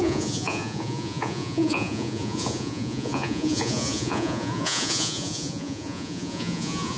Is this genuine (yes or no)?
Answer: no